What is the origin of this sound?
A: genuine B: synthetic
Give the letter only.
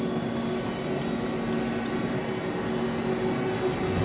A